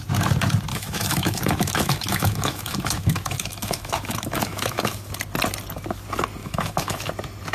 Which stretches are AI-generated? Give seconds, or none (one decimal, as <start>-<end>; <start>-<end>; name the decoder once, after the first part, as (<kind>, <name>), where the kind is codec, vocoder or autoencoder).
0.7-5.1 (autoencoder, DAC-VAE); 6.4-7.1